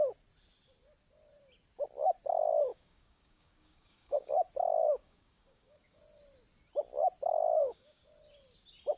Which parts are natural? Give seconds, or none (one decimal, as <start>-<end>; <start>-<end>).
0.0-2.7; 4.3-4.8; 6.0-7.5; 8.0-9.0

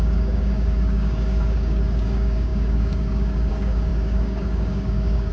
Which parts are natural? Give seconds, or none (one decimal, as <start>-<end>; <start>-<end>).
none

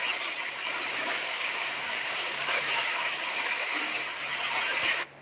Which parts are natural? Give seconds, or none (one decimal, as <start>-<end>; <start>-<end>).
0.0-0.9; 4.0-5.2

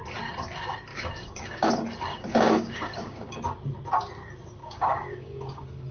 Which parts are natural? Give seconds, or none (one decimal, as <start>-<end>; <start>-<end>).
0.0-0.9; 1.7-2.1; 3.4-4.6

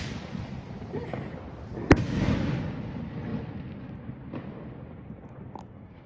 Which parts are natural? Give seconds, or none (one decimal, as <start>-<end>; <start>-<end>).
0.0-6.1

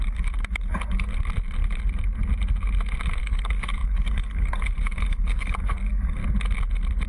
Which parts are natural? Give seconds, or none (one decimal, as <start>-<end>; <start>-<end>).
1.1-3.2; 6.2-7.1